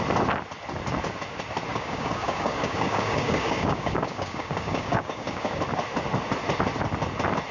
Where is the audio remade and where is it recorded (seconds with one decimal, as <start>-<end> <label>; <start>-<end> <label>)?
0.0-1.7 recorded; 1.7-5.6 remade; 5.6-7.5 recorded